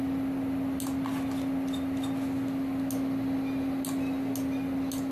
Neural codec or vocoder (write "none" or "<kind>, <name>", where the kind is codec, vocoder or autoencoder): none